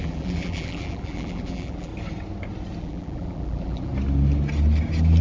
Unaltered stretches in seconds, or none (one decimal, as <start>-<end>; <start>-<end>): 1.9-2.8; 3.9-5.2